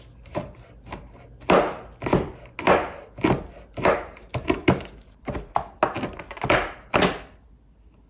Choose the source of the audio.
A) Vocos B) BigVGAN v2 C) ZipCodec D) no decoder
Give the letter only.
D